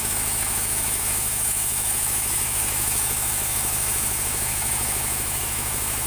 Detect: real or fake fake